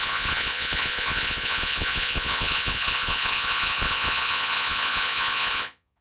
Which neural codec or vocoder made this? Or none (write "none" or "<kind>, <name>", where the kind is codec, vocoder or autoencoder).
vocoder, Vocos